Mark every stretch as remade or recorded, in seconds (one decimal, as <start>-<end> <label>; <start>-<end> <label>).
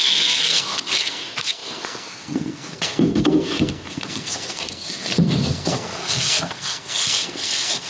0.0-7.9 remade